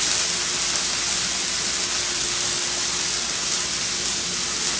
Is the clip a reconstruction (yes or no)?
no